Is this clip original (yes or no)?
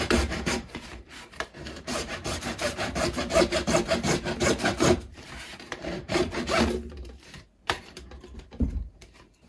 no